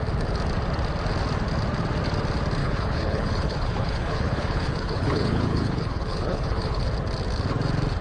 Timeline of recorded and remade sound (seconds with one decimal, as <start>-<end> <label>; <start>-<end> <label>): 0.0-2.6 recorded; 2.6-6.8 remade; 6.8-8.0 recorded